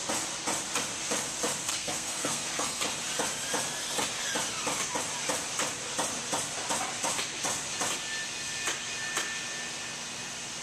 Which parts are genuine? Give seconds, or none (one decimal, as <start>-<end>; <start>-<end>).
0.0-1.7; 2.8-10.6